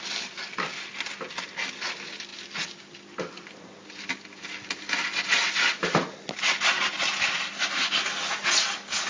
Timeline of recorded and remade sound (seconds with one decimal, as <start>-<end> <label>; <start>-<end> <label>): 0.0-9.1 recorded